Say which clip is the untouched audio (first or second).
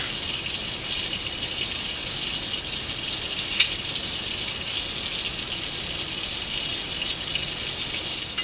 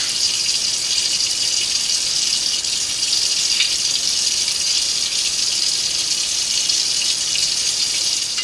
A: first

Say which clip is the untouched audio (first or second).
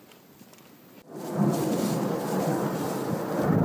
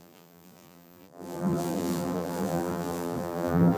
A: first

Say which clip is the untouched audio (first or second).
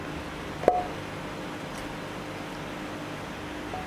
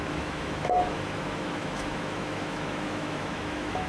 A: first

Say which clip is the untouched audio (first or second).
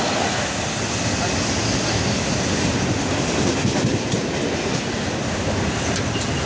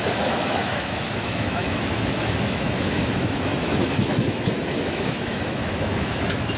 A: first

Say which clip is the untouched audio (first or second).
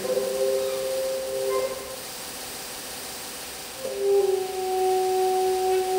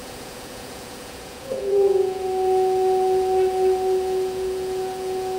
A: first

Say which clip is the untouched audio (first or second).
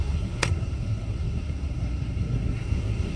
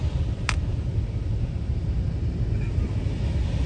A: second